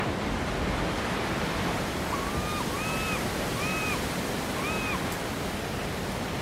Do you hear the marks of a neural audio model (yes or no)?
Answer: no